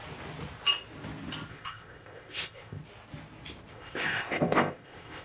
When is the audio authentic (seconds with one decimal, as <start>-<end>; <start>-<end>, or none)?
0.0-1.5; 2.8-3.7

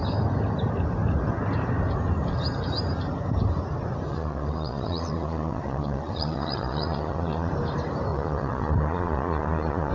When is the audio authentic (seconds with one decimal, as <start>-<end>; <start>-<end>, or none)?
0.0-4.1; 7.5-8.1

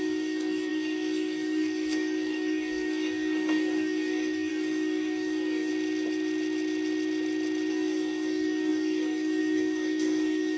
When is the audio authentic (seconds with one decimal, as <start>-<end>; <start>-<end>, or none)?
5.7-7.7

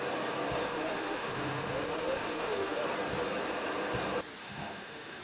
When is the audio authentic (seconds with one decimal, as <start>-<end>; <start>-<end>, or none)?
0.0-0.7; 2.8-4.4

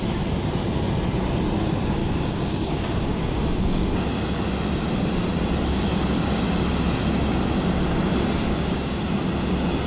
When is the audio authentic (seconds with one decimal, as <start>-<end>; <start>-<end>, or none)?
0.0-2.0; 3.9-8.5; 9.0-9.9